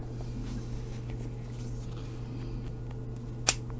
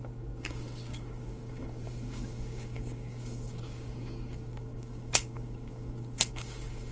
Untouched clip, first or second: first